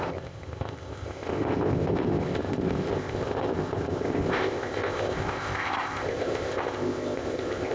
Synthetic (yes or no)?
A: yes